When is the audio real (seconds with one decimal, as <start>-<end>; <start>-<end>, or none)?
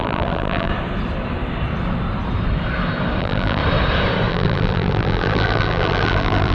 0.7-3.2; 3.6-4.3